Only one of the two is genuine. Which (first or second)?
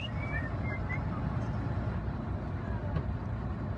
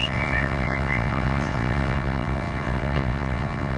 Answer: first